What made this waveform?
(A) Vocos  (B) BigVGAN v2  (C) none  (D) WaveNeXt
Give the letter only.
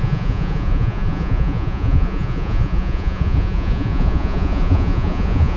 A